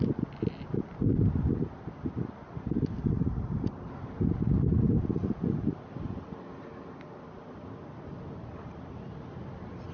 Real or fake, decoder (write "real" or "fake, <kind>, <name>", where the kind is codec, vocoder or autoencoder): real